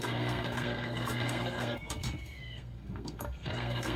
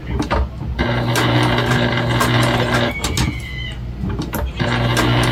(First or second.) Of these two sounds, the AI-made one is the first